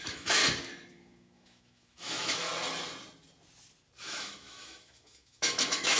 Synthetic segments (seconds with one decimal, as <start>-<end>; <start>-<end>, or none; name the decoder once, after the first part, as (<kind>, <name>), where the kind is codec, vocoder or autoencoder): 0.0-0.4 (autoencoder, DAC-VAE); 0.9-2.5; 4.0-6.0